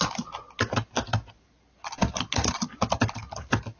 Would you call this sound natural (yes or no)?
yes